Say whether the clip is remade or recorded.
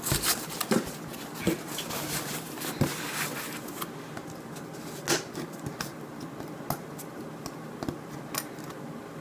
recorded